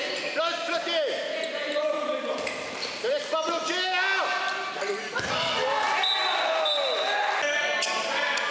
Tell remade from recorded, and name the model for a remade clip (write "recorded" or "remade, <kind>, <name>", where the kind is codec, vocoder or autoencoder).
recorded